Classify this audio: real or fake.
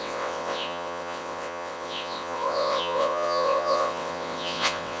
fake